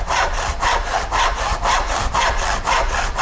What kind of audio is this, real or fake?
real